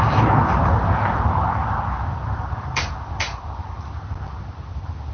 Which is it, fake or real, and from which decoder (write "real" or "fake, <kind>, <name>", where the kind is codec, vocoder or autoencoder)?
real